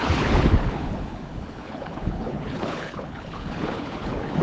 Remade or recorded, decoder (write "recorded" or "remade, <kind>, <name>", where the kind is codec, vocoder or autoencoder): remade, codec, HILCodec